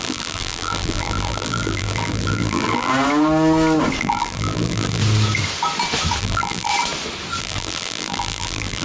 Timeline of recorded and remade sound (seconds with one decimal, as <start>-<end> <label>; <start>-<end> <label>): 0.0-2.9 remade; 2.9-4.0 recorded; 4.0-5.0 remade; 5.0-6.2 recorded; 6.2-6.7 remade; 6.7-7.4 recorded; 7.4-8.8 remade